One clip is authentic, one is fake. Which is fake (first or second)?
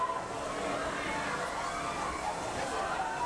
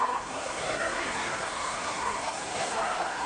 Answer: second